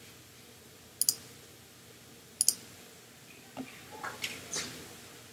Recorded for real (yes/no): yes